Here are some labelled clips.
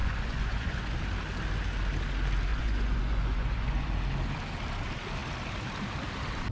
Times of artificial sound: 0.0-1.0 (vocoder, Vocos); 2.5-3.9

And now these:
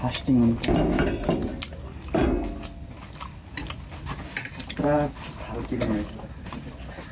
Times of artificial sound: none

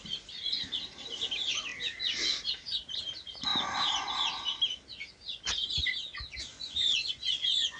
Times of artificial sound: 6.5-7.8 (vocoder, Vocos)

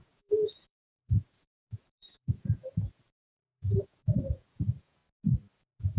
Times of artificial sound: 0.0-5.0 (vocoder, Vocos); 5.6-6.0

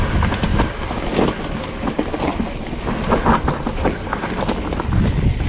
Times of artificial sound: none

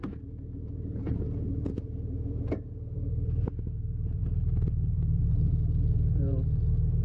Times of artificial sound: 0.0-7.0 (vocoder, Vocos)